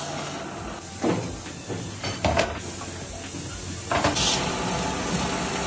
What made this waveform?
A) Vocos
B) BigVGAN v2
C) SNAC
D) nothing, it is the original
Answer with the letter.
D